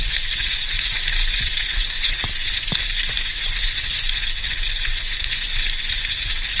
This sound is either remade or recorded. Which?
remade